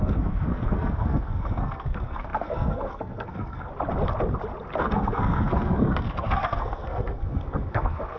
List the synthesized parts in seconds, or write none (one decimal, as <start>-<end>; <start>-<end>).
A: 0.0-3.7; 4.8-8.2

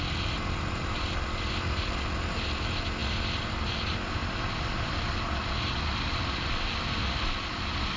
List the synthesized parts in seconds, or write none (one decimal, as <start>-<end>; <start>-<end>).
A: none

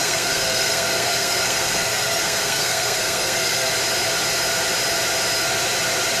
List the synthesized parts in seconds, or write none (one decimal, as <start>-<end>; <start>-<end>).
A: 0.0-3.7

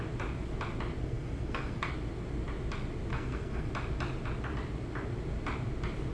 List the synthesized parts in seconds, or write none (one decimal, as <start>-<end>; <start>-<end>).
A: 1.0-1.9; 3.1-3.7

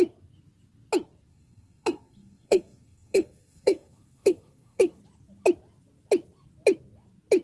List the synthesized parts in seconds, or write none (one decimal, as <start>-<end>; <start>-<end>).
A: 1.3-5.0

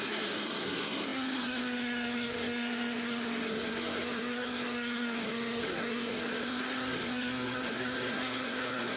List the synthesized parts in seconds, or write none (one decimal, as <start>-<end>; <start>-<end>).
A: 0.0-9.0